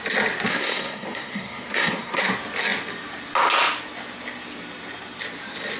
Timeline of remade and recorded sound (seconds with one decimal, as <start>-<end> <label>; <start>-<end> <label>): 0.0-0.5 recorded; 0.5-2.2 remade; 2.2-5.8 recorded